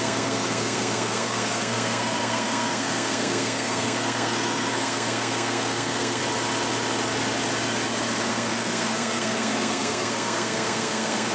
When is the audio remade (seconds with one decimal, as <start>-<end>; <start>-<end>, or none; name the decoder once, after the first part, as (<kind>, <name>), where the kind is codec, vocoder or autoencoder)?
0.0-6.2 (codec, SNAC); 8.3-11.3